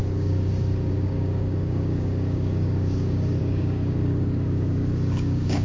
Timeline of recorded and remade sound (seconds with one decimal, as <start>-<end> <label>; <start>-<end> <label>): 0.0-5.6 remade